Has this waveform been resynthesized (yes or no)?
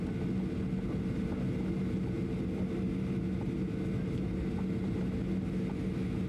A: no